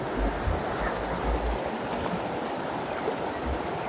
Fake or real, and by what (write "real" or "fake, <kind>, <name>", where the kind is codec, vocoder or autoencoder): real